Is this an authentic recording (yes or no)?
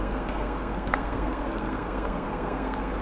no